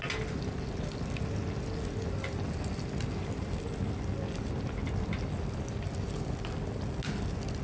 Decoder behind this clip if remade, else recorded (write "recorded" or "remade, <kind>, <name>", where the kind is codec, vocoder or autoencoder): recorded